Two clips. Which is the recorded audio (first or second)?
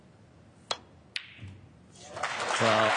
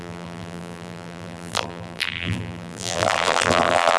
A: first